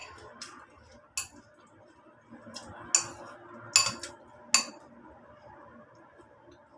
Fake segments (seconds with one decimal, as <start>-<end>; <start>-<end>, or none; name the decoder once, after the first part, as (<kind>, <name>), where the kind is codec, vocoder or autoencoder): none